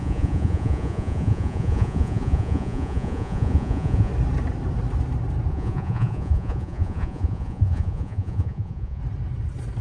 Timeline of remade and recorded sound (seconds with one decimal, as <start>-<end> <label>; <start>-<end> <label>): 0.0-4.1 remade; 4.1-5.5 recorded; 5.5-9.0 remade; 9.0-9.8 recorded